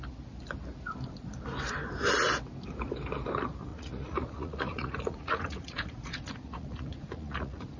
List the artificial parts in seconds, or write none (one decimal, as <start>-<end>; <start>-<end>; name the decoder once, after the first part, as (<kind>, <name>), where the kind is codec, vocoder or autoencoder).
3.7-7.8 (vocoder, Vocos)